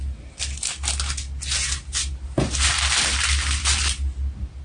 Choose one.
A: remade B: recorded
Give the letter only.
B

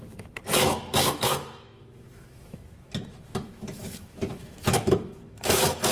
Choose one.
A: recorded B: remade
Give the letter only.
B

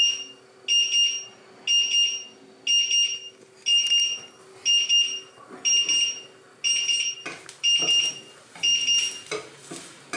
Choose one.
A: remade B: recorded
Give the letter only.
B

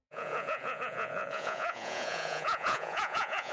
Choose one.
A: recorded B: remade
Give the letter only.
B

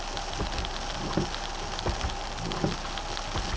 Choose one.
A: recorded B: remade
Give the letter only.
A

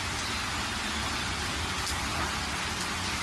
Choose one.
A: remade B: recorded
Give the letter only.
B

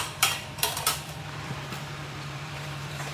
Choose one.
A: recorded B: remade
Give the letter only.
B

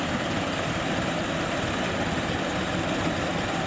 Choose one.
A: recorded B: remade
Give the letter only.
A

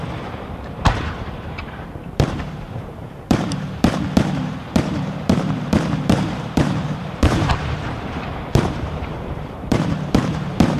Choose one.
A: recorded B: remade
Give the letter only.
B